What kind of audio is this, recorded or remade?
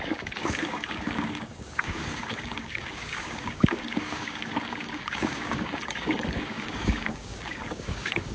remade